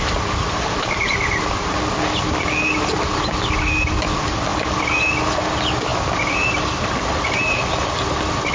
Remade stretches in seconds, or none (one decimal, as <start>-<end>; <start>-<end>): none